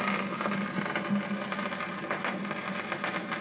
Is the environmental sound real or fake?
real